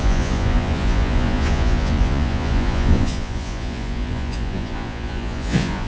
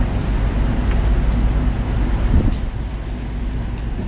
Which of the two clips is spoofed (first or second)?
first